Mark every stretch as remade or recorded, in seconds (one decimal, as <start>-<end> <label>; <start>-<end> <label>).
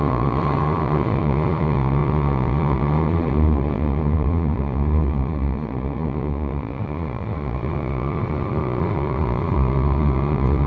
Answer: 0.0-10.7 remade